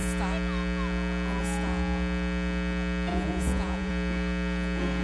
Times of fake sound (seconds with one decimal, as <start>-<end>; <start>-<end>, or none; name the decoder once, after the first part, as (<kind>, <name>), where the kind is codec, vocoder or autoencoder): 3.1-3.9 (vocoder, Vocos)